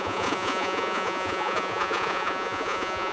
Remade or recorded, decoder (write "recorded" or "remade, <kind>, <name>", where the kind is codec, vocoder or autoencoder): remade, vocoder, Vocos